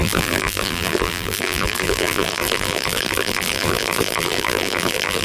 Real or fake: fake